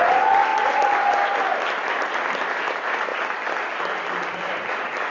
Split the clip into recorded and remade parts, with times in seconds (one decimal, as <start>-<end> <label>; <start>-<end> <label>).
0.0-5.1 recorded